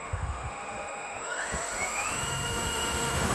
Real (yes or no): no